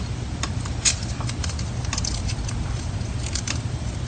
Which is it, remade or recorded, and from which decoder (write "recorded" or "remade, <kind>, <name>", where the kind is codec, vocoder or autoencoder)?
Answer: recorded